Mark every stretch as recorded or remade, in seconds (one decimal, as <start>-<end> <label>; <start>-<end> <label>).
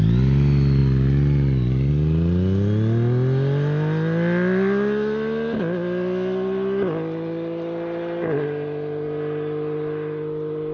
0.0-10.7 recorded